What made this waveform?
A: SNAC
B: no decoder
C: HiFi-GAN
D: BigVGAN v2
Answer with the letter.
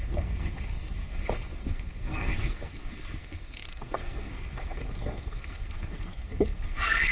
A